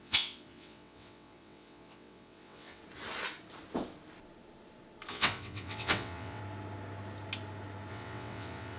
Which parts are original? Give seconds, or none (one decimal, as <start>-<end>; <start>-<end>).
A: 2.8-5.1; 6.4-7.9